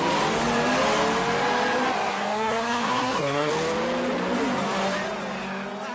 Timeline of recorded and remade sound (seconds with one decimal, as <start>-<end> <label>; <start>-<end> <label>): 0.0-2.1 recorded; 2.1-3.5 remade; 3.5-5.9 recorded